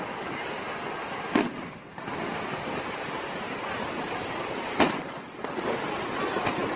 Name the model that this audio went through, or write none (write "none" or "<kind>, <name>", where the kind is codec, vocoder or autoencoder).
none